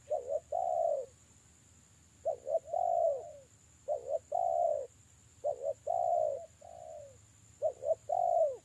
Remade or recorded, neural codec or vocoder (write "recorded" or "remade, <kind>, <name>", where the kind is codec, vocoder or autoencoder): recorded